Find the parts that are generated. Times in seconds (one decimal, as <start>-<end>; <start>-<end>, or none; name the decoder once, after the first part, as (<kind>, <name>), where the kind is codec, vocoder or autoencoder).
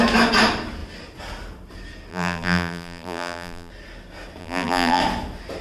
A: 2.1-3.7 (vocoder, BigVGAN v2); 4.4-5.0